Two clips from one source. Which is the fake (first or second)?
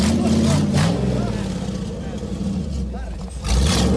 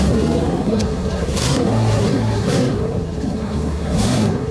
second